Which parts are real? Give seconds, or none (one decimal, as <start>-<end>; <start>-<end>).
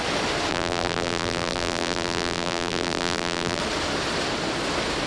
0.0-0.5; 3.6-5.1